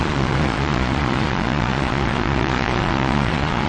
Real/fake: fake